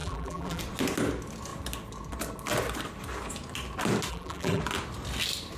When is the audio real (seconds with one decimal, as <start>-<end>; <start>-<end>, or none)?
0.6-4.1; 4.6-5.6